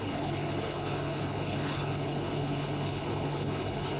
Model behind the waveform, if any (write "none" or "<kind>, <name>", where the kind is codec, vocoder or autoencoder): codec, HILCodec